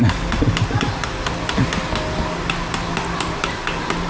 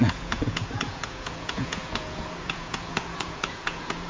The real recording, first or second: first